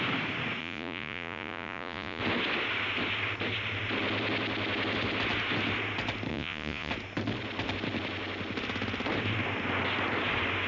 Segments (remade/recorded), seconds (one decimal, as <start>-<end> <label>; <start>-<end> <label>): 0.0-0.6 recorded; 0.6-2.2 remade; 2.2-6.3 recorded; 6.3-6.9 remade; 6.9-10.7 recorded